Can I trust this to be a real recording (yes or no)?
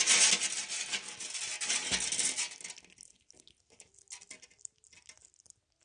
yes